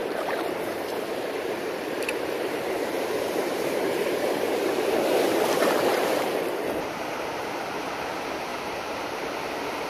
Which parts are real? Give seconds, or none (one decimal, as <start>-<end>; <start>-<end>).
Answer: 5.0-5.9; 7.3-8.5; 9.3-9.9